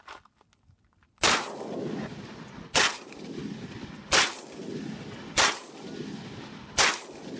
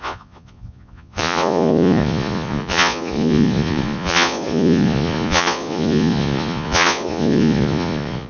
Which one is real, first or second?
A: first